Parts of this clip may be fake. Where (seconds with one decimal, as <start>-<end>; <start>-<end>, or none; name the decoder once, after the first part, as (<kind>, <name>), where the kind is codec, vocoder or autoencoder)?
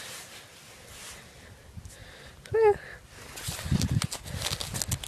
none